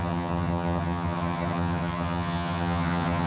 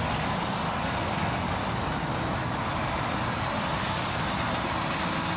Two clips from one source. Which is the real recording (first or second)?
second